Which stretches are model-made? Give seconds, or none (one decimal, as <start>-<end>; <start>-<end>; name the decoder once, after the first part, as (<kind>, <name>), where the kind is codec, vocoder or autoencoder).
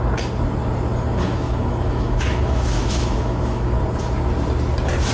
1.3-3.8 (autoencoder, DAC-VAE)